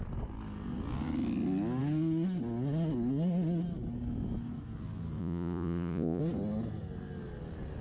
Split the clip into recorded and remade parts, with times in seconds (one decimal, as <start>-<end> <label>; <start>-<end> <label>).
0.0-5.2 recorded; 5.2-6.2 remade; 6.2-7.8 recorded